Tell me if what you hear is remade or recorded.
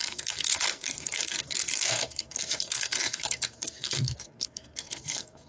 remade